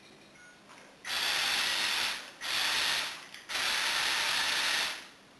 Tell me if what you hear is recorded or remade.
recorded